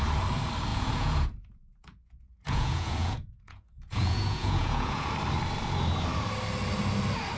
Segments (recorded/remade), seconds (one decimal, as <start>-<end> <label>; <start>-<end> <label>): 0.0-0.7 recorded; 0.7-5.1 remade; 5.1-7.4 recorded